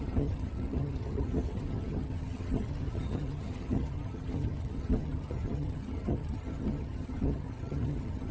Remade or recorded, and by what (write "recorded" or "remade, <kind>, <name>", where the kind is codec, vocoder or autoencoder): remade, vocoder, HiFi-GAN